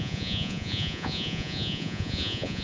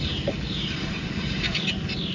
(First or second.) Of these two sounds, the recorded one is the second